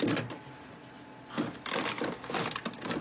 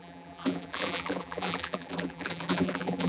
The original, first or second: first